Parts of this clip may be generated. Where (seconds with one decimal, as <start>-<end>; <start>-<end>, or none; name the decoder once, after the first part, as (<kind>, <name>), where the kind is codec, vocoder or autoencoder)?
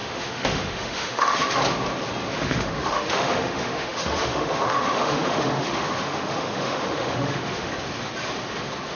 0.0-1.6 (autoencoder, DAC-VAE); 2.4-7.7